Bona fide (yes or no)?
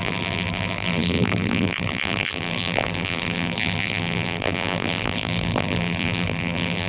no